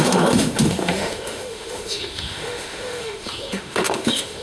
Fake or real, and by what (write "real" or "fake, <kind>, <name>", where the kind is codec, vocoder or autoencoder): fake, autoencoder, DAC-VAE